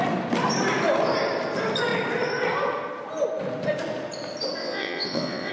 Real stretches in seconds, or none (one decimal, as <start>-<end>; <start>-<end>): 0.0-4.6